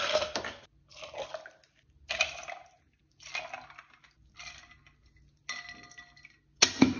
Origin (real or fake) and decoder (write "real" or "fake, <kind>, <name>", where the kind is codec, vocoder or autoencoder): real